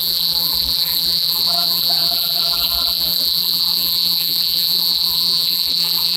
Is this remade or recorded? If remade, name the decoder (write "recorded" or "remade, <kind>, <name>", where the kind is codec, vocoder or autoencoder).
remade, vocoder, BigVGAN v2